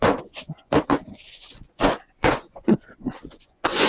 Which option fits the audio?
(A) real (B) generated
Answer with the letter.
B